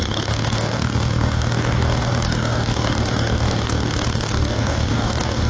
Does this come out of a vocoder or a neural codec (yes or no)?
yes